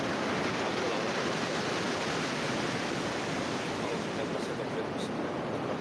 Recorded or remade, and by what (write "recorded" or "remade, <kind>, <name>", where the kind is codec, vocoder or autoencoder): recorded